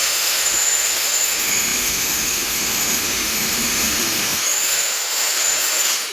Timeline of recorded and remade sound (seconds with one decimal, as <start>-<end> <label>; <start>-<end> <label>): 0.0-6.1 remade